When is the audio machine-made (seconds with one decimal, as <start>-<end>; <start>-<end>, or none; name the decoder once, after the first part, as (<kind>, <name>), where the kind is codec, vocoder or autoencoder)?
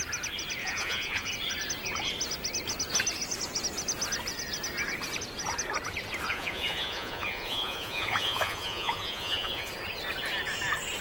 0.6-1.3 (vocoder, Vocos); 6.3-9.7